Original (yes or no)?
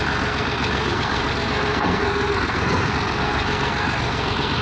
no